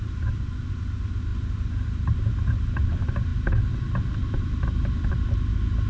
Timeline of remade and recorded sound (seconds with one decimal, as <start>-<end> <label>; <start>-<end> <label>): 0.0-5.9 recorded